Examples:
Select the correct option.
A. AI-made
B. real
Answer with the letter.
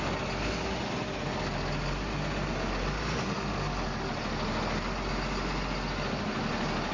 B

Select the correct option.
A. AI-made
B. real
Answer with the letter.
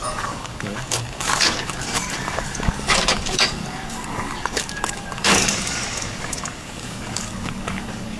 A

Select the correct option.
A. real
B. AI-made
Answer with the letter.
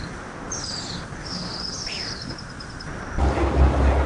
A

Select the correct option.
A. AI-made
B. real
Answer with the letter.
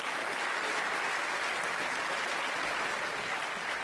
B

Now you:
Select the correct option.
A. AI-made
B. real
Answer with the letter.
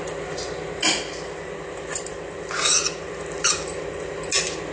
B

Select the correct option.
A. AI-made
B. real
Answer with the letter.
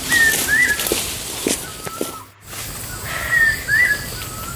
B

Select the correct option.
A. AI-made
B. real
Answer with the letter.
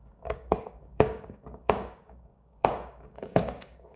A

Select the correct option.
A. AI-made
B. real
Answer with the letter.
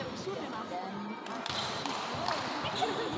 B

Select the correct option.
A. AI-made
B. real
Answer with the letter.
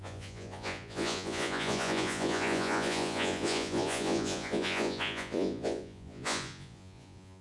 A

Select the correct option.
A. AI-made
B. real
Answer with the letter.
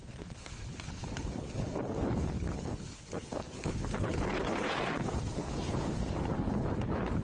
A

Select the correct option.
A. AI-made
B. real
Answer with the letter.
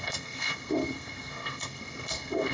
A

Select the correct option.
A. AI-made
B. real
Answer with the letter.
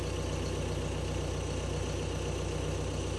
B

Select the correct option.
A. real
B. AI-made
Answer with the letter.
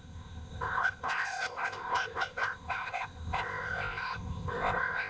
B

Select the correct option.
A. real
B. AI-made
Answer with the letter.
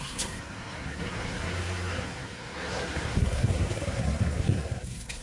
B